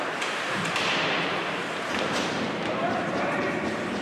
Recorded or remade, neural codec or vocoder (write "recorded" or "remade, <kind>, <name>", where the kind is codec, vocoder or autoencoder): remade, vocoder, BigVGAN v2